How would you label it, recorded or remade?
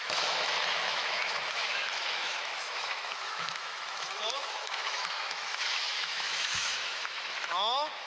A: remade